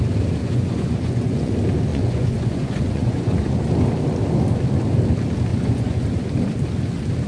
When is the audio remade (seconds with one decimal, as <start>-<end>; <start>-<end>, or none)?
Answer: 0.4-1.5; 1.9-3.6; 5.5-6.0